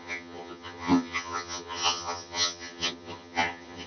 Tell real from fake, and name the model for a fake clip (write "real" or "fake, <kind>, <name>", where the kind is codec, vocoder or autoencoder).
fake, vocoder, HiFi-GAN